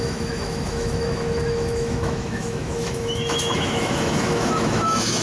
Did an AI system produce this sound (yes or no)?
yes